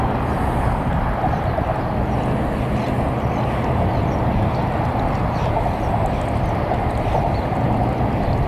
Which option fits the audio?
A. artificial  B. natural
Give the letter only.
B